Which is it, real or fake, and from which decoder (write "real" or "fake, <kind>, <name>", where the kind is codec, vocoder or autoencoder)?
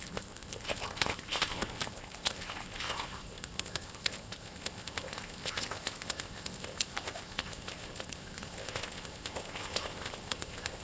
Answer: fake, codec, ZipCodec